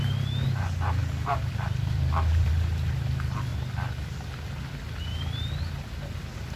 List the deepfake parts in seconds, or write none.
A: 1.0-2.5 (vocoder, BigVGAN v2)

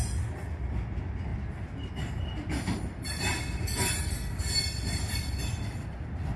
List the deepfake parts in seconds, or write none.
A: none

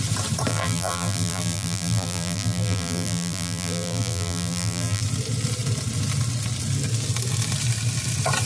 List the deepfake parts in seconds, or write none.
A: 0.5-5.0 (vocoder, BigVGAN v2)

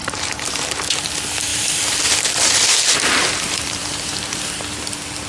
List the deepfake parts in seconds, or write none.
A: 0.0-0.8 (vocoder, BigVGAN v2); 1.5-4.4

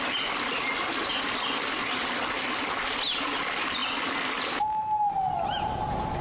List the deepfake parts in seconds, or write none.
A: none